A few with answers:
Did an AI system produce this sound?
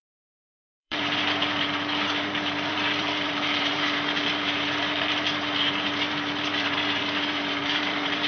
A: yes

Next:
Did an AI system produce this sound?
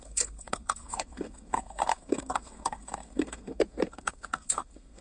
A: yes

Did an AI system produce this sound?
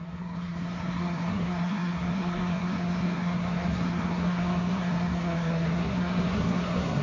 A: yes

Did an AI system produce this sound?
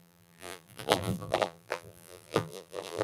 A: yes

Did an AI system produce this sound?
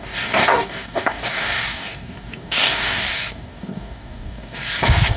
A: yes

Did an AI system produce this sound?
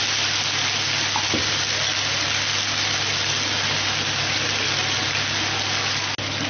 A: no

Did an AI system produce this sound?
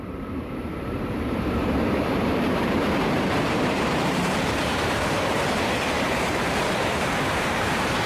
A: yes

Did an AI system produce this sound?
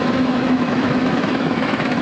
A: yes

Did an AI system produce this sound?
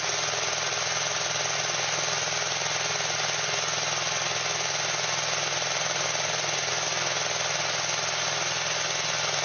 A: no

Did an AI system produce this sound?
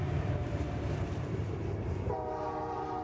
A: yes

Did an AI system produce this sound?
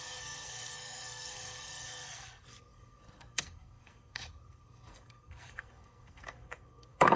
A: yes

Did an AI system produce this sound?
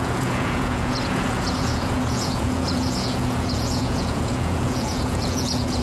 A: yes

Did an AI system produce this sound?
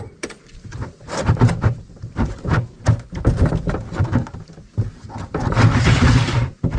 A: yes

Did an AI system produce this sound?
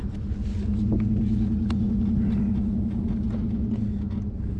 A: no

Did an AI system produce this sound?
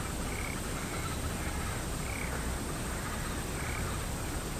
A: no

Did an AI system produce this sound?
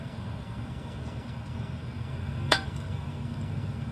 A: yes